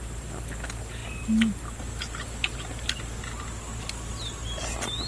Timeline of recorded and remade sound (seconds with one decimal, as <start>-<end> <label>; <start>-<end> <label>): 0.0-5.1 recorded